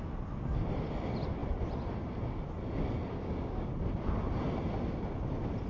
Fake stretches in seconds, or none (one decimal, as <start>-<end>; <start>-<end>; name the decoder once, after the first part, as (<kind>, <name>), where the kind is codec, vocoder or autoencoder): 3.1-3.7 (codec, DAC)